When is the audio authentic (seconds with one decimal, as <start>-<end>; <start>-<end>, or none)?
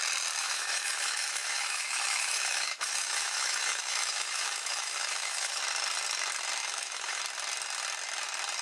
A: 0.0-0.4; 5.6-6.6; 7.2-8.6